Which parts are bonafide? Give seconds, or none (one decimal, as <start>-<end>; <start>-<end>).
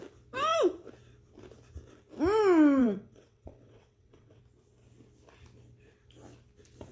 0.0-2.8; 4.4-6.9